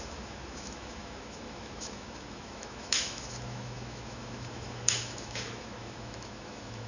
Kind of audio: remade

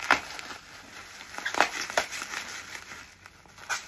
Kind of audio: recorded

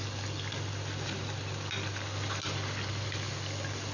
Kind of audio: recorded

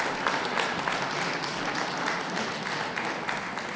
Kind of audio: recorded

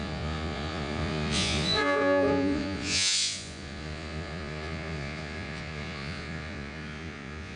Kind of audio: remade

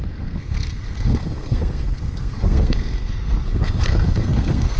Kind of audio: remade